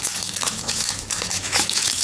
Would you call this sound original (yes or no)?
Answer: no